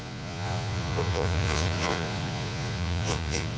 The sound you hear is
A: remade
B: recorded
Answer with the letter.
A